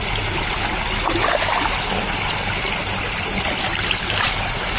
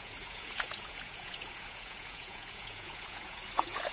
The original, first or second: first